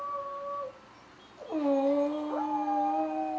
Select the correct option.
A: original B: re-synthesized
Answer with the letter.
A